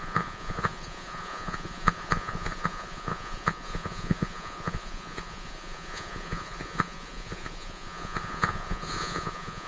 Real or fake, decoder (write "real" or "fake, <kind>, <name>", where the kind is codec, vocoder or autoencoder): fake, vocoder, Vocos